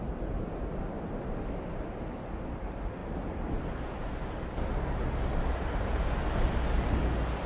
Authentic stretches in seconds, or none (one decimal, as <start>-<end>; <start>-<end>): 0.0-7.5